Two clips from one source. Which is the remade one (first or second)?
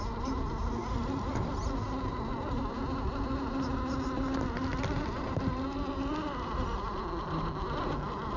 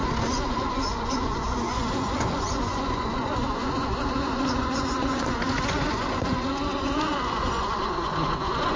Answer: second